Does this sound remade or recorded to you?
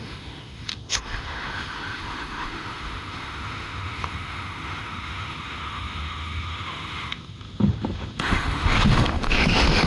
remade